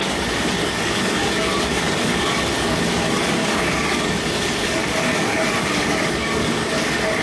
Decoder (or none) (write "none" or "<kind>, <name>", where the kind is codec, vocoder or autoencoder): codec, DAC